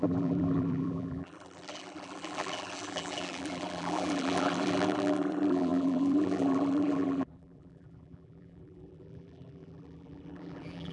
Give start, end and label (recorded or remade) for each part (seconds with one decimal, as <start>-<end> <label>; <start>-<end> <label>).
0.0-10.9 remade